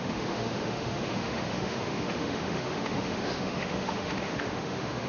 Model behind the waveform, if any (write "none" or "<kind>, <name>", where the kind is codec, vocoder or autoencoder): autoencoder, DAC-VAE